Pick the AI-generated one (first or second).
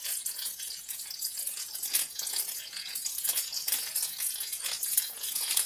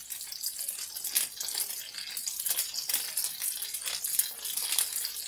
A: first